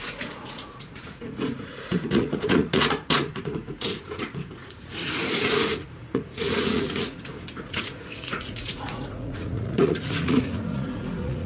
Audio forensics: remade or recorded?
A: remade